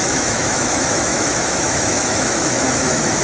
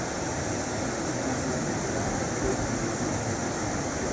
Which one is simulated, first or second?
first